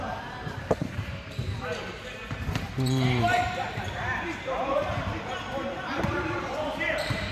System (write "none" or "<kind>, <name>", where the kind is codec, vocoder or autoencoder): vocoder, BigVGAN v2